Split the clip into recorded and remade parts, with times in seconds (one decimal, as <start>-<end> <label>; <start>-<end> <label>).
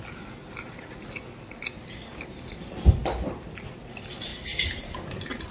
0.0-5.5 recorded